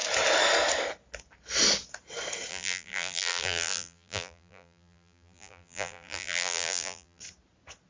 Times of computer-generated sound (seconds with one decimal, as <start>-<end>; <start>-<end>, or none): 2.5-7.2